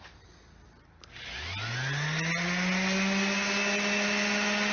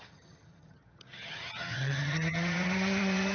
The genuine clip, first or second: first